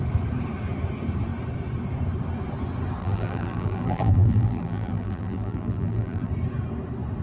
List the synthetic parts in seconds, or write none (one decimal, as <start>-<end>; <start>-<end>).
3.0-6.3